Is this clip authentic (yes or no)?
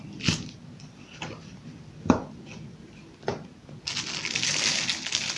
yes